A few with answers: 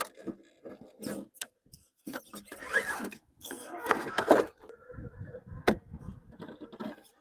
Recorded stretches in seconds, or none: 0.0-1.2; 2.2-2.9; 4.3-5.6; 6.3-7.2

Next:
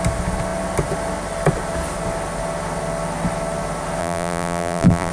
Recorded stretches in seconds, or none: 0.0-4.0

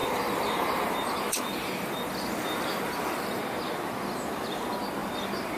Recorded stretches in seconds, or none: 3.4-5.6